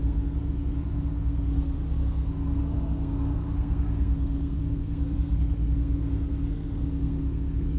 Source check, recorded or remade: remade